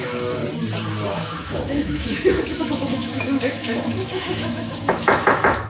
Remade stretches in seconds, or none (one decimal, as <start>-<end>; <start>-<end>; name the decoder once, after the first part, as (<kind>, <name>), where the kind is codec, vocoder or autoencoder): 0.0-0.4 (autoencoder, DAC-VAE); 1.1-5.7